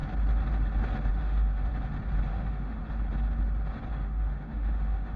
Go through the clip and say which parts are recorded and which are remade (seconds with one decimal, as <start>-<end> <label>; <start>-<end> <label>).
0.0-1.1 recorded; 1.1-1.7 remade; 1.7-2.3 recorded; 2.3-2.8 remade; 2.8-3.9 recorded; 3.9-5.2 remade